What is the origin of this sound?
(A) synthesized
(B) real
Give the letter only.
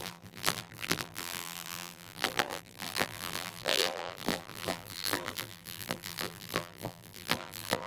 A